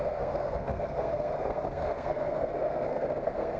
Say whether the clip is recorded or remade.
remade